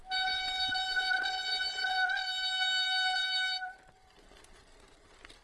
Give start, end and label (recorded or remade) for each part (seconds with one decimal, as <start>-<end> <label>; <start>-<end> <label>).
0.0-5.4 recorded